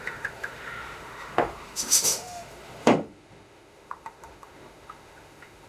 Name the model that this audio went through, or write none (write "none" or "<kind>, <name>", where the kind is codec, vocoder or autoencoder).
autoencoder, DAC-VAE